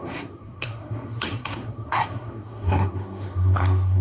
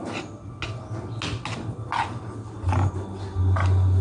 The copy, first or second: first